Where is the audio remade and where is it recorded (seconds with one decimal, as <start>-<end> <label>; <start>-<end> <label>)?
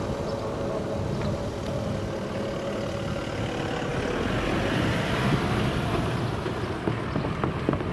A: 0.0-7.9 recorded